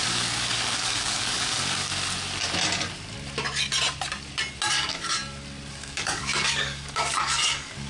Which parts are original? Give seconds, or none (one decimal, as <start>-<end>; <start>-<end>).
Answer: 1.9-4.7; 5.2-5.7